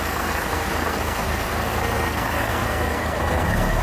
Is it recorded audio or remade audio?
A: remade